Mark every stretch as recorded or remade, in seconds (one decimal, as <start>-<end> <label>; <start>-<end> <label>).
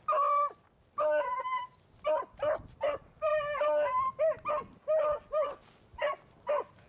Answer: 0.0-6.9 recorded